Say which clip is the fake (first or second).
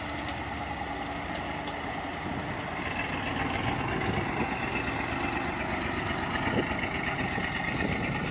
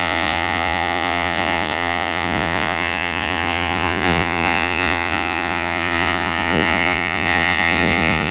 second